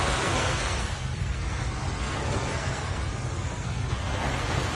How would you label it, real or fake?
fake